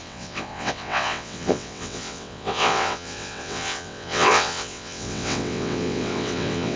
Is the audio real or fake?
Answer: fake